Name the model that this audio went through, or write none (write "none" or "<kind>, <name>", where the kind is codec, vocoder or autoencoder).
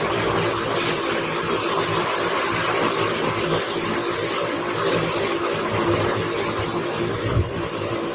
none